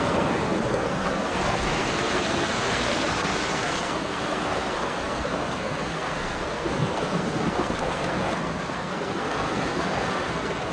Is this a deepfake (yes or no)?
yes